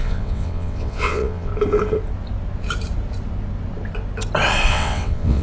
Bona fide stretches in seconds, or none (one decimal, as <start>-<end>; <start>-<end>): 1.5-4.7